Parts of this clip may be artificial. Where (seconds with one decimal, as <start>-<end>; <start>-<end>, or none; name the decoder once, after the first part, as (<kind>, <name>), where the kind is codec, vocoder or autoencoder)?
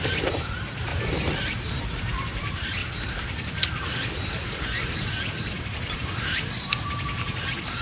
0.0-0.9 (vocoder, BigVGAN v2); 1.8-2.8; 5.9-7.8